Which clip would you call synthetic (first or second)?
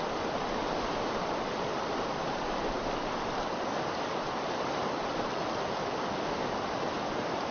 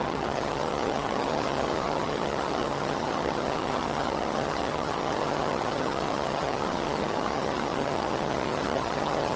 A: second